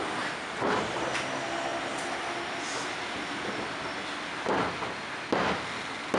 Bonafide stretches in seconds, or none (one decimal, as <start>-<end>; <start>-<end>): 0.0-6.2